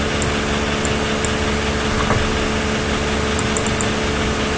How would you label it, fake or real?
real